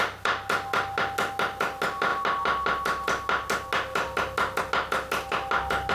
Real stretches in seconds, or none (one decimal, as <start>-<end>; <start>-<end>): 0.0-5.9